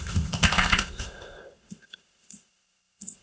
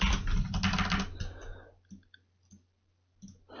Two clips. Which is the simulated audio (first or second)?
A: first